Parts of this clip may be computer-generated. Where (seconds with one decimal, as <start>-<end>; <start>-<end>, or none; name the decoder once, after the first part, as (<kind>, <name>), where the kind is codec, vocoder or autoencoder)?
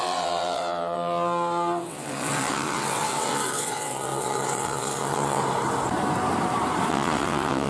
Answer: 0.0-5.4 (vocoder, WaveNeXt); 6.9-7.7